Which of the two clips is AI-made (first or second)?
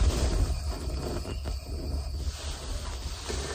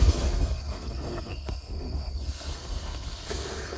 second